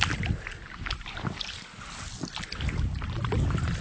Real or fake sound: real